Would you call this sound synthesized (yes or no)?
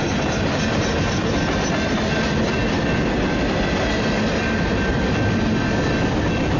no